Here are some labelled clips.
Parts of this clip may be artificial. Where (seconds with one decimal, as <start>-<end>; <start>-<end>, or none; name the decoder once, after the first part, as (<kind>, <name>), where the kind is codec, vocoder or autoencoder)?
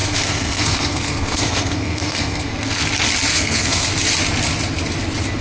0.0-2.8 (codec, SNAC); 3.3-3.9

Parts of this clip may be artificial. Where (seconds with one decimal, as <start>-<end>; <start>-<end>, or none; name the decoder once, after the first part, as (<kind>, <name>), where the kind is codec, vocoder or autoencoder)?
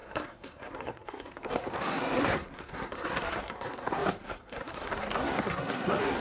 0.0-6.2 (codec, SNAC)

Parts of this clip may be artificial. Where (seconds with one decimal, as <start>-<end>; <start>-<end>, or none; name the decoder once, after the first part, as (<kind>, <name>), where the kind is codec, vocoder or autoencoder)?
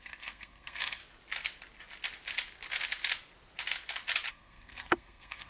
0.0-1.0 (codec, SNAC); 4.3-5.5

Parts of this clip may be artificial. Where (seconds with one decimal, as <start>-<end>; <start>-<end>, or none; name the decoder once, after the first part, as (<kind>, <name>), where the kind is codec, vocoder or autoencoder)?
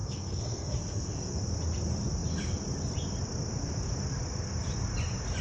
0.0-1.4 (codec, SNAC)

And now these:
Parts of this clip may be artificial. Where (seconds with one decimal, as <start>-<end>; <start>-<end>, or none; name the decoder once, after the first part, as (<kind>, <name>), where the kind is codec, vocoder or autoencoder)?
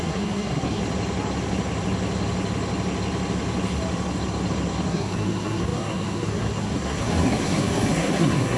0.0-0.8 (codec, SNAC); 4.9-8.6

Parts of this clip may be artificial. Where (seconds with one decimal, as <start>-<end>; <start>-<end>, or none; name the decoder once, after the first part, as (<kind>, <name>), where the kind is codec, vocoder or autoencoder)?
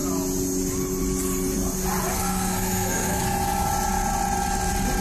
2.1-3.2 (codec, SNAC)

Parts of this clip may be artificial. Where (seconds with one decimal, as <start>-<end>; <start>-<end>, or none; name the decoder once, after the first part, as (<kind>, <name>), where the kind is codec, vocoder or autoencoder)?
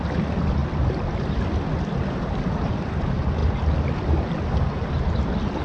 none